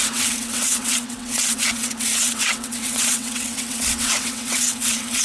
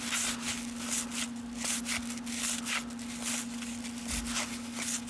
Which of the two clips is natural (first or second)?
second